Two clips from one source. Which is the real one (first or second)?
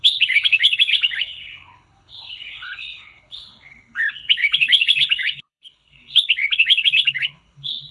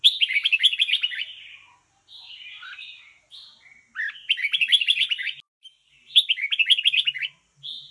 second